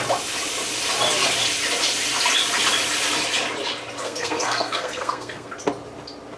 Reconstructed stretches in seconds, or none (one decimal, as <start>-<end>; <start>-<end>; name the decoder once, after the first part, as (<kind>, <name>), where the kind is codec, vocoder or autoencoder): 4.0-5.5 (codec, SNAC)